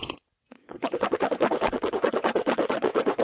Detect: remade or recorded remade